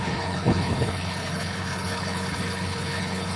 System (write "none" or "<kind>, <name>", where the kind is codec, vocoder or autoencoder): codec, HILCodec